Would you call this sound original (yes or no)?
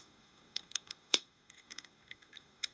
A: no